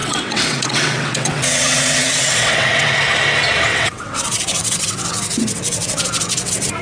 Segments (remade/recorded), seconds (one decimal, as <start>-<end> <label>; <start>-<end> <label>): 0.0-2.9 remade; 2.9-3.7 recorded; 3.7-6.8 remade